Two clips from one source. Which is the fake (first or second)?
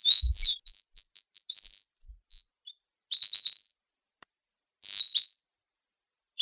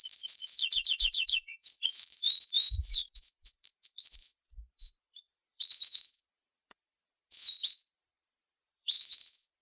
second